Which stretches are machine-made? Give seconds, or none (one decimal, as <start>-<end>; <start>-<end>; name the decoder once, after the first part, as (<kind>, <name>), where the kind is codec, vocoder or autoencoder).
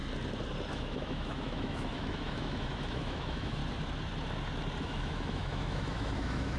0.7-3.6 (autoencoder, DAC-VAE); 4.8-6.6